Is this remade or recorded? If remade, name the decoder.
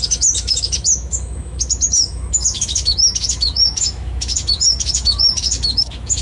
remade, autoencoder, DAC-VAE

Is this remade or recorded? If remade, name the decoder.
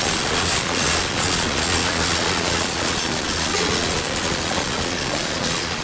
remade, vocoder, Vocos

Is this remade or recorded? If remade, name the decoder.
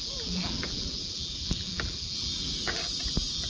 remade, vocoder, BigVGAN v2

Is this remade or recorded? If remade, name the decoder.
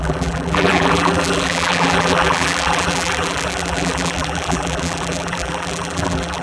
remade, vocoder, BigVGAN v2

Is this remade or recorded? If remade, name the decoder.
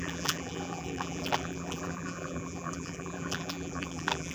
remade, vocoder, BigVGAN v2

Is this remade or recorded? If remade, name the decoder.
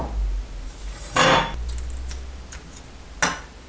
recorded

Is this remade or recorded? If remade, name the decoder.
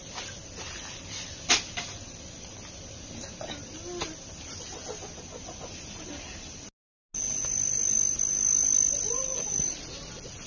recorded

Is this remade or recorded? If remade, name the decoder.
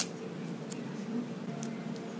recorded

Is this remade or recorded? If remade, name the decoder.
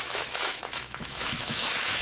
remade, autoencoder, DAC-VAE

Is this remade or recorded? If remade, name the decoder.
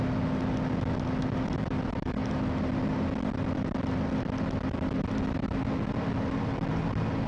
recorded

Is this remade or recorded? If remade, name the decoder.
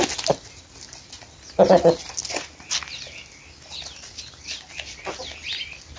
recorded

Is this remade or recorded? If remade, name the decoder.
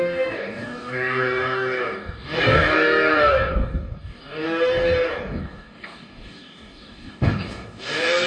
remade, codec, DAC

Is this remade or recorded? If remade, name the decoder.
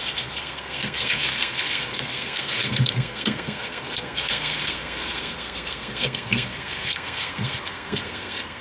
remade, codec, SNAC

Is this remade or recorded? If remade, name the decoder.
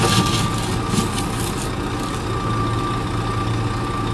recorded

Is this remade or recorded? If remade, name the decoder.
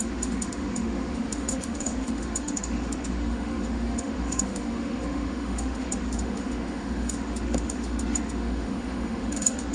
remade, autoencoder, DAC-VAE